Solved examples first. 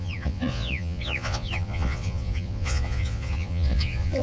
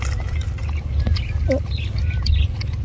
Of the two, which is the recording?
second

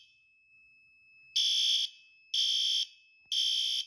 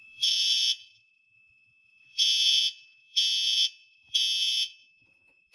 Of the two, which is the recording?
first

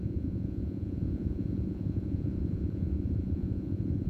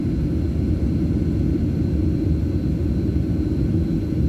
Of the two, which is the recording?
second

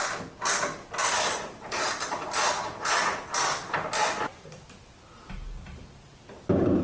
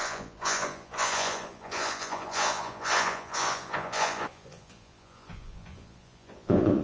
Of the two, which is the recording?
first